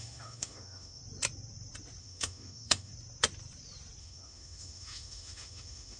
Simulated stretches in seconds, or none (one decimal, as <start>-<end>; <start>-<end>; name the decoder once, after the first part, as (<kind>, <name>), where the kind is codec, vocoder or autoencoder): 0.0-1.0 (autoencoder, DAC-VAE); 2.0-2.9; 4.0-6.0